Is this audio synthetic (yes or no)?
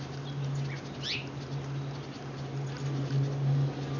no